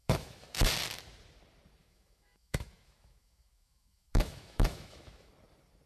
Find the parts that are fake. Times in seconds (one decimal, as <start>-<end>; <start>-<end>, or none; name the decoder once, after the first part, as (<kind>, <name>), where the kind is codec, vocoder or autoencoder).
0.0-0.6 (autoencoder, DAC-VAE); 1.8-5.3